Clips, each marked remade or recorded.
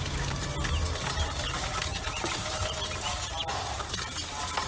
recorded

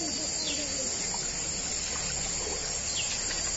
recorded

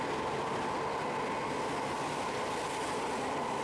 recorded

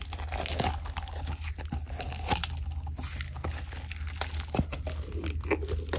recorded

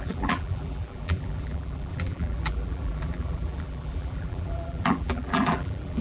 remade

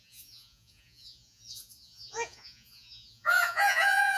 remade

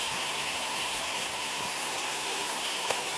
remade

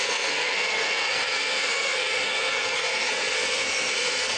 remade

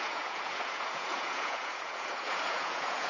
remade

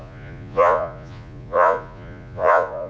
remade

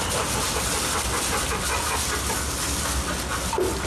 recorded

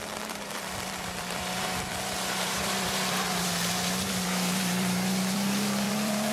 remade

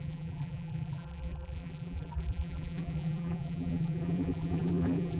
remade